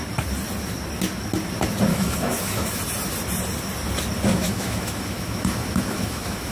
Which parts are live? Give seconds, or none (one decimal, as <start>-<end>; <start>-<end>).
0.0-1.9; 2.8-4.3